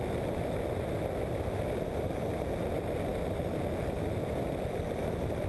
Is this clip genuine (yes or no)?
yes